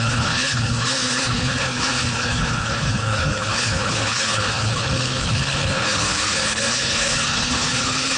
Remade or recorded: remade